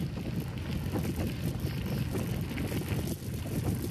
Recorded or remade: recorded